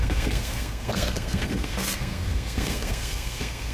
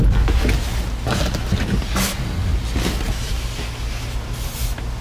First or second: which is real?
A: second